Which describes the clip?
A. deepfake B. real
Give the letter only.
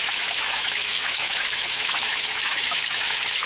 A